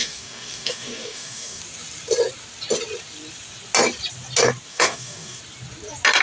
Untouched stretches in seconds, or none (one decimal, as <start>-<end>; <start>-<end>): 1.6-4.7; 5.4-6.2